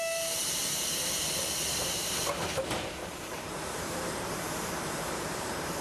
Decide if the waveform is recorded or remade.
remade